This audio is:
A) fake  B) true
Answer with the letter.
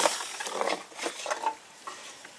B